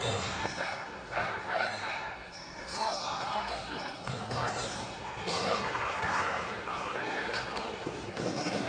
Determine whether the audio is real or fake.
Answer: fake